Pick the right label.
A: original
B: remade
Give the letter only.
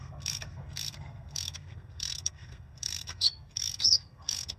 B